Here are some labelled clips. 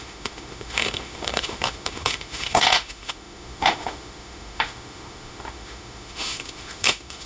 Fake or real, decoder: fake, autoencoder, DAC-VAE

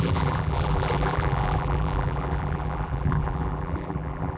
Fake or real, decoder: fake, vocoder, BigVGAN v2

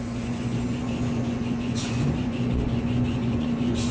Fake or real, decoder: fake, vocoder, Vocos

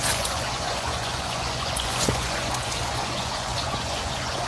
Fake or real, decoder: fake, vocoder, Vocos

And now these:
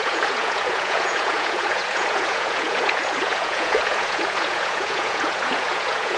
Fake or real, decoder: fake, vocoder, Vocos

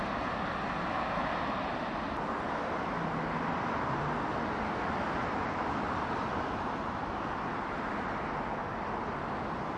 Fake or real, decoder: real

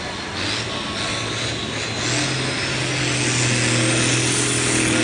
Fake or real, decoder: real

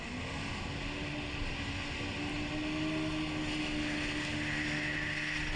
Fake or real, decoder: real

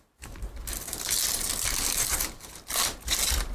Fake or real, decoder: real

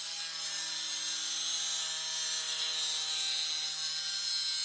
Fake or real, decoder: real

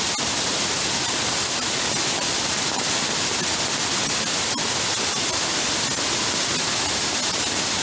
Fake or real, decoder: real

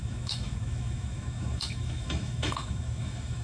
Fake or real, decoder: fake, autoencoder, DAC-VAE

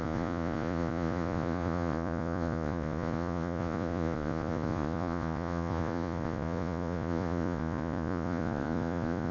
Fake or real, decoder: fake, vocoder, Vocos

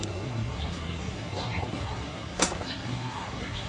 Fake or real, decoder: fake, codec, SNAC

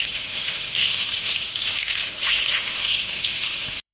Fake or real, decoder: fake, autoencoder, DAC-VAE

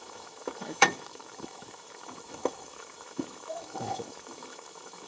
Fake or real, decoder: fake, autoencoder, DAC-VAE